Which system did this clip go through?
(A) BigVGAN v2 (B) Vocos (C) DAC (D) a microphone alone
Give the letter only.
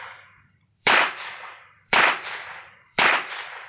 A